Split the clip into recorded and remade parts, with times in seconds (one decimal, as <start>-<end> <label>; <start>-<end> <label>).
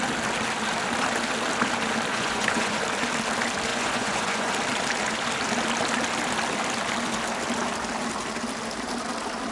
0.0-2.1 recorded; 2.1-2.8 remade; 2.8-3.7 recorded; 3.7-4.5 remade; 4.5-9.5 recorded